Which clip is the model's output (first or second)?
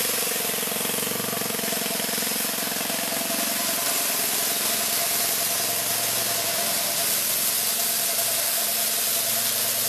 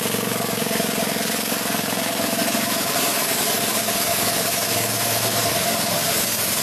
second